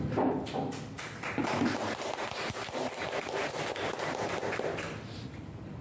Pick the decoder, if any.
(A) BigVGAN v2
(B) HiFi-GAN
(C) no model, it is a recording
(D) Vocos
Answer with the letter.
C